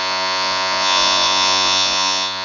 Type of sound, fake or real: fake